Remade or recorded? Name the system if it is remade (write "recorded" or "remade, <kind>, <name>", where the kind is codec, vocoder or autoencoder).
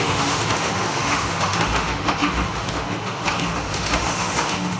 remade, autoencoder, DAC-VAE